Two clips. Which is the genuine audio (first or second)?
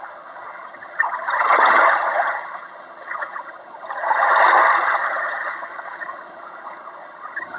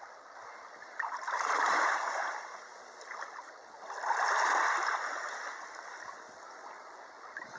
second